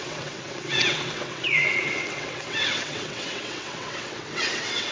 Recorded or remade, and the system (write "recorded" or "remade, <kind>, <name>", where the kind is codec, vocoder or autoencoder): remade, vocoder, WaveNeXt